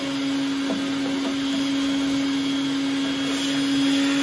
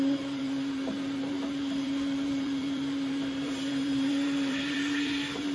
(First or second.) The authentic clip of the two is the first